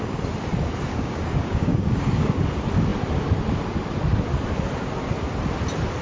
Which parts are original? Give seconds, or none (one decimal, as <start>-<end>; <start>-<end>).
0.0-0.9; 2.4-6.0